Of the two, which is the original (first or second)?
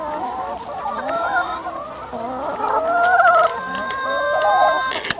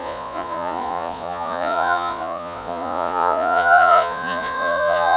first